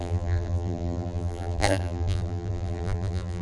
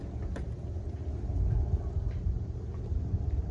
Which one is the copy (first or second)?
first